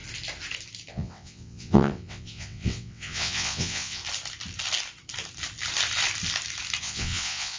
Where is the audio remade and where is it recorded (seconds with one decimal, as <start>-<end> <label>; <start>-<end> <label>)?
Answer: 0.0-0.9 recorded; 0.9-4.0 remade; 4.0-6.8 recorded; 6.8-7.6 remade